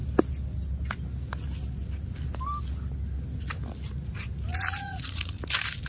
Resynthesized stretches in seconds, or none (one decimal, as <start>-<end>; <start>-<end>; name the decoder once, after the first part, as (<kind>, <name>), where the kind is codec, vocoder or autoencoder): 4.5-5.4 (vocoder, Vocos)